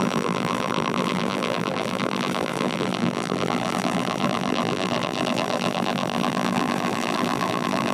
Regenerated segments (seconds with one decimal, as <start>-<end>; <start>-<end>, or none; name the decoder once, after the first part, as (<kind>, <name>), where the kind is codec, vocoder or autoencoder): 0.0-7.9 (vocoder, BigVGAN v2)